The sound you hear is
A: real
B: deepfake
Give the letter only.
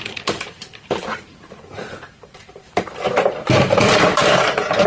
B